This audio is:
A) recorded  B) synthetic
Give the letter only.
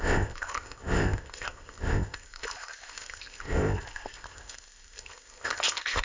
B